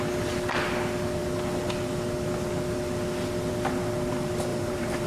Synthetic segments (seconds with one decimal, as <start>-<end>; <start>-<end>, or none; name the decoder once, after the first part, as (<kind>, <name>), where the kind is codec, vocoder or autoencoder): 4.5-5.1 (vocoder, BigVGAN v2)